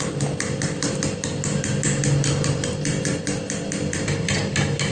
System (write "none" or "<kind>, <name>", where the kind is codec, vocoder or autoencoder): none